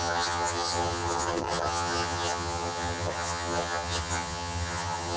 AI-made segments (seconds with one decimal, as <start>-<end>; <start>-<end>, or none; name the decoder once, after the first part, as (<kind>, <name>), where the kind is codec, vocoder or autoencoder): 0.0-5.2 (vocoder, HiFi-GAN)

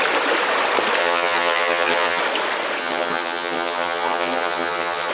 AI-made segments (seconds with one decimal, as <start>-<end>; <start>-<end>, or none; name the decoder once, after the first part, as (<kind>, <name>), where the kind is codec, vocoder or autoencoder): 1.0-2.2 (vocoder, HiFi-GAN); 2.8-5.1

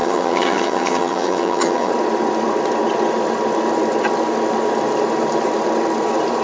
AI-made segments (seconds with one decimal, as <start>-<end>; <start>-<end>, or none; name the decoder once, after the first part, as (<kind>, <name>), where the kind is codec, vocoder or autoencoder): 0.0-1.9 (vocoder, HiFi-GAN)

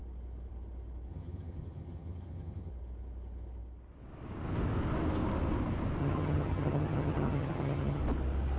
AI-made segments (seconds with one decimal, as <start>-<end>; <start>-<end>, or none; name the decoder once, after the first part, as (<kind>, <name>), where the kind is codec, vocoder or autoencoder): 1.1-2.7 (vocoder, HiFi-GAN); 6.0-8.0

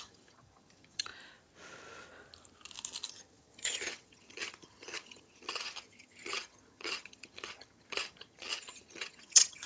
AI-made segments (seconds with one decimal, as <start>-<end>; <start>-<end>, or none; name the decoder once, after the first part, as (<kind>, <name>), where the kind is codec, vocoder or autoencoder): 0.0-1.1 (vocoder, HiFi-GAN); 3.1-9.7